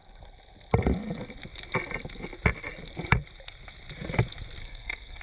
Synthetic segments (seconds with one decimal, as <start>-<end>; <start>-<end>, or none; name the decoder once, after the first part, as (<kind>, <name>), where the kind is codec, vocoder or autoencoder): 4.6-5.2 (codec, SNAC)